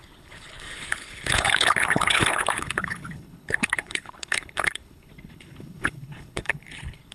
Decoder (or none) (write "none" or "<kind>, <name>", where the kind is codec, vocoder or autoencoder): codec, HILCodec